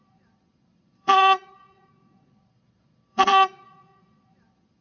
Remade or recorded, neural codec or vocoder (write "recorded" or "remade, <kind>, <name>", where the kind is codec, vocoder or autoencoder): remade, vocoder, Vocos